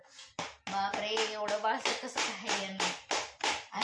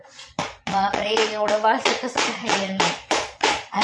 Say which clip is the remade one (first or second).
second